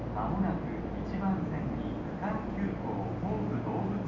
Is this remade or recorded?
recorded